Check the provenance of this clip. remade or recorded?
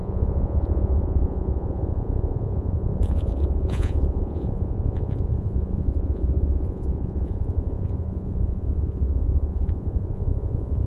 remade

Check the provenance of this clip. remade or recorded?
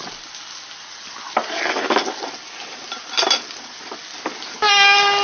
recorded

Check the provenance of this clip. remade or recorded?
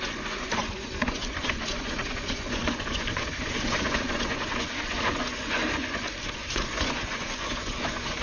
remade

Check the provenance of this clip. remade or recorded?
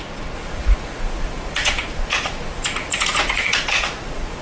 remade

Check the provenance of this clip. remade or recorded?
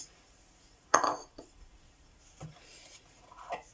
remade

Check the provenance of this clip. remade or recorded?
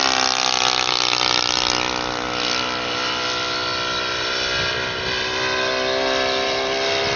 recorded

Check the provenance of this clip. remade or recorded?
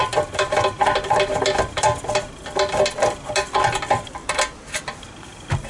recorded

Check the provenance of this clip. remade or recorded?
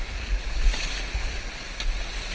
recorded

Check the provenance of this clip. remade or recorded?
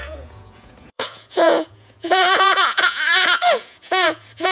remade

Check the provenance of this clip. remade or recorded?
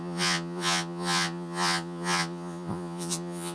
remade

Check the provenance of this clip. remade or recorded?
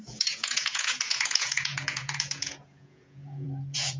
remade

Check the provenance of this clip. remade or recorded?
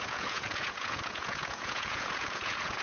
remade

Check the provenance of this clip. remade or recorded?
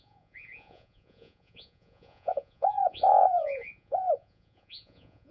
remade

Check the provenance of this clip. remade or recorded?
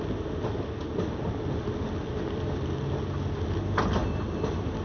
recorded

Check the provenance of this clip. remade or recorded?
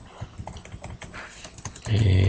recorded